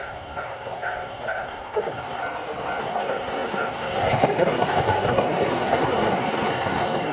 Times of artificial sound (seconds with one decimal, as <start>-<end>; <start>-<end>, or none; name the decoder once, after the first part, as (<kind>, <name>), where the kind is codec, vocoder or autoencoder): 0.0-2.2 (codec, SNAC); 2.8-7.1